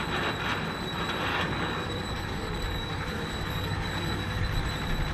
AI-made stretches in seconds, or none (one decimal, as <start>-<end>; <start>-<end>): 1.3-4.4